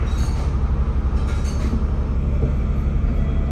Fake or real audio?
real